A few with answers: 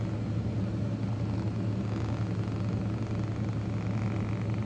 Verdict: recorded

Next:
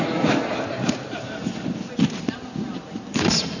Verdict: recorded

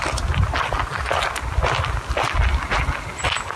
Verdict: recorded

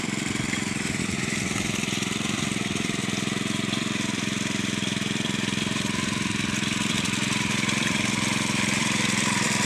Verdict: remade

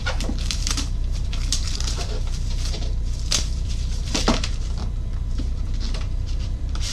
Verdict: remade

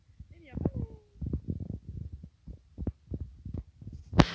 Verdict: recorded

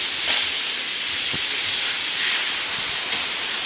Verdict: recorded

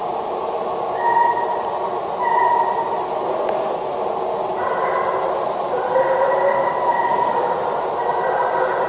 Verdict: recorded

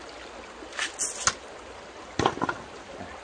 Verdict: recorded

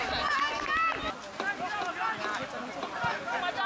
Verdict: recorded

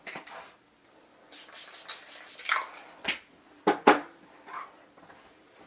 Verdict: recorded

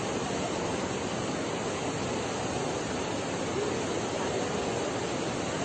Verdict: recorded